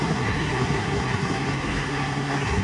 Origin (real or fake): fake